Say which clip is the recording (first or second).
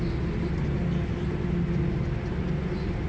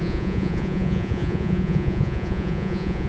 first